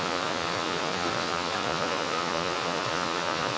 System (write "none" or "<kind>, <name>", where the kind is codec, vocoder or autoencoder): vocoder, Vocos